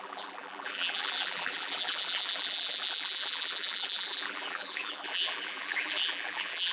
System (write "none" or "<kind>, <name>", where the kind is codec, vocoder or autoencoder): vocoder, BigVGAN v2